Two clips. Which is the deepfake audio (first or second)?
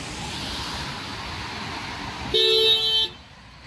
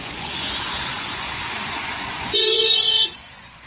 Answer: second